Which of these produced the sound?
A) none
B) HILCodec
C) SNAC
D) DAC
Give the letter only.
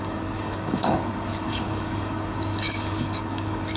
D